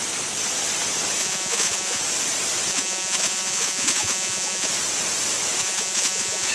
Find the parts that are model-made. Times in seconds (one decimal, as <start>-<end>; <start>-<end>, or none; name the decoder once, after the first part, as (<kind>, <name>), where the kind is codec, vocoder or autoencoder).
1.2-2.0 (vocoder, Vocos); 2.7-4.7; 5.6-6.5